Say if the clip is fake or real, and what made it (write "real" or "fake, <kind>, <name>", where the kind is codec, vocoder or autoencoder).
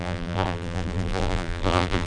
fake, vocoder, BigVGAN v2